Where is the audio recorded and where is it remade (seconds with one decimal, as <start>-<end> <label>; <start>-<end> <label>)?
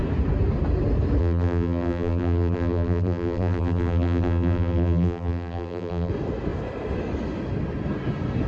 0.0-1.2 recorded; 1.2-6.1 remade; 6.1-8.5 recorded